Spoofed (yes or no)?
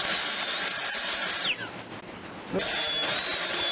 no